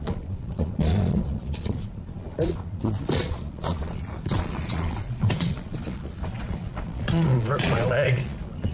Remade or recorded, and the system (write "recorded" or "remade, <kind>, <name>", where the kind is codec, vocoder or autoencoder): remade, vocoder, Vocos